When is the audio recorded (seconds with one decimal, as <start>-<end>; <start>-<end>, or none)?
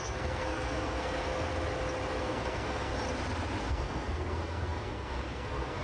1.5-2.2; 2.9-3.6